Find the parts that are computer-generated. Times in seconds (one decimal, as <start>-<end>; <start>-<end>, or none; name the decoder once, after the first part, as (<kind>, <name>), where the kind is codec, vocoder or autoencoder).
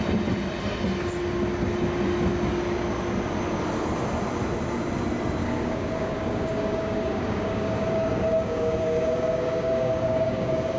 5.4-10.8 (codec, DAC)